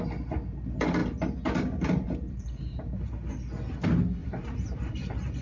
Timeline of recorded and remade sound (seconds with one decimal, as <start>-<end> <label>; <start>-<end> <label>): 0.0-1.0 recorded; 1.0-3.3 remade; 3.3-4.2 recorded; 4.2-5.4 remade